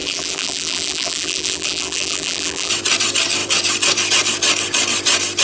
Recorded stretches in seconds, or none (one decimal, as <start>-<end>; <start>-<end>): 2.7-5.4